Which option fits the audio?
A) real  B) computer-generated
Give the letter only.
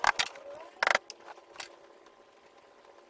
A